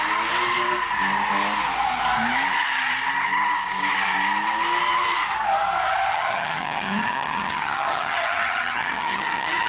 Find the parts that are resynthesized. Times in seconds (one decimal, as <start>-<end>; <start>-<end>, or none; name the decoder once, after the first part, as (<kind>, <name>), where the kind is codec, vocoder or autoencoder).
6.1-9.7 (vocoder, HiFi-GAN)

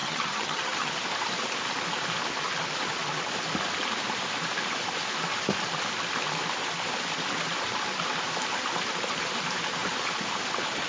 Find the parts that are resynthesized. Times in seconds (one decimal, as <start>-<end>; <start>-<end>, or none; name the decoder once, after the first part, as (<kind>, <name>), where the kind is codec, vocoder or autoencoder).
0.0-0.9 (vocoder, HiFi-GAN)

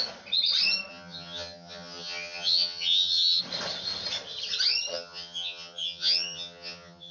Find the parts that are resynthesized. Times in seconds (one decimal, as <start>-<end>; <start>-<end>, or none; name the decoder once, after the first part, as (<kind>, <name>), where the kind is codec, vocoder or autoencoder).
0.9-3.4 (vocoder, HiFi-GAN); 4.9-7.1

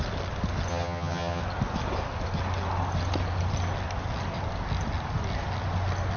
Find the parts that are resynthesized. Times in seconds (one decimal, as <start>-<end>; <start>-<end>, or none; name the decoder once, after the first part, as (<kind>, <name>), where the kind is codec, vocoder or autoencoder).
0.7-1.4 (vocoder, HiFi-GAN)

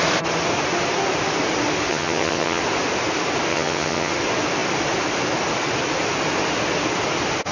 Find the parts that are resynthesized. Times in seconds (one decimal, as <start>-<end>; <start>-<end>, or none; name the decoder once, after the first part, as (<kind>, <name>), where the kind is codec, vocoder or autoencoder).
1.9-2.6 (vocoder, HiFi-GAN); 3.5-4.1

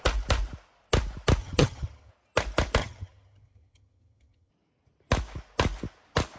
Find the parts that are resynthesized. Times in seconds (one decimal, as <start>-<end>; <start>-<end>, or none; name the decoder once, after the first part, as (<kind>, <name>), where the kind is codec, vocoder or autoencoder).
1.4-2.1 (vocoder, HiFi-GAN); 2.8-4.5

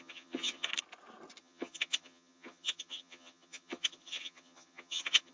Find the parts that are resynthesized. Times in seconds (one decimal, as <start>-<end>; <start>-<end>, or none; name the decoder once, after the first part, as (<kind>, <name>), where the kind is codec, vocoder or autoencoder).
0.0-0.7 (vocoder, HiFi-GAN); 1.4-5.3

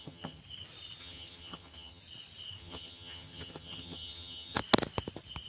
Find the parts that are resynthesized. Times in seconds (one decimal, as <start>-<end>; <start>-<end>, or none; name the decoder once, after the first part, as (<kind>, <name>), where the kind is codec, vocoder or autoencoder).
0.0-0.4 (vocoder, HiFi-GAN); 1.0-2.0; 2.6-4.6